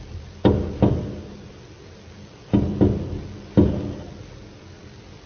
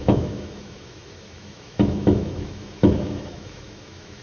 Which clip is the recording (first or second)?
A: first